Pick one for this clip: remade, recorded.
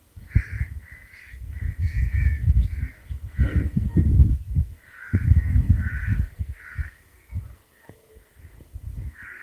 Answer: remade